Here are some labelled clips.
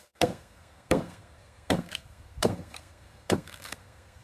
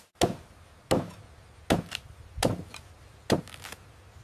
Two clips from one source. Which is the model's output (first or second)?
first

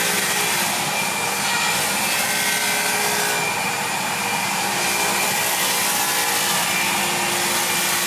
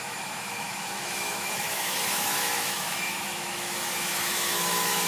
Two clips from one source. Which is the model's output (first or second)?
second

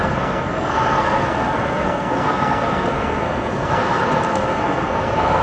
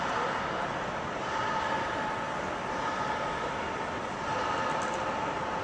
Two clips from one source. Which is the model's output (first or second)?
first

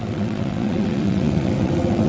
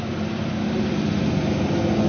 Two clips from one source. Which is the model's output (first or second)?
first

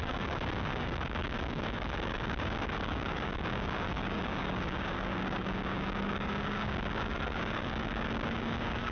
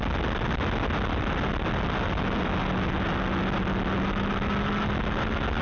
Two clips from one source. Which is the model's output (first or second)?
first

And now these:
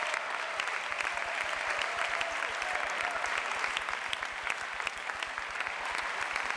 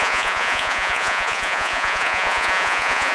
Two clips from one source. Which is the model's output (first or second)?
second